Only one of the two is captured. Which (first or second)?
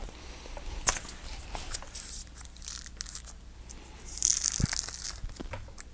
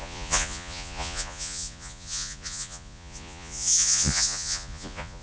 first